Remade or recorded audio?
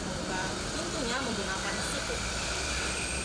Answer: remade